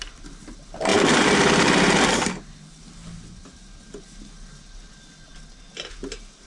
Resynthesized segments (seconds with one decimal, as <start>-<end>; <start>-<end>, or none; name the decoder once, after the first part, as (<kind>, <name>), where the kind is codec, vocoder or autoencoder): 0.9-2.0 (vocoder, BigVGAN v2)